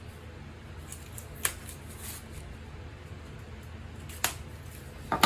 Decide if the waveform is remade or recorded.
recorded